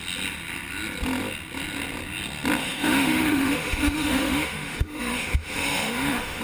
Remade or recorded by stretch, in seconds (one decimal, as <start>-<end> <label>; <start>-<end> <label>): 0.0-2.6 recorded; 2.6-6.4 remade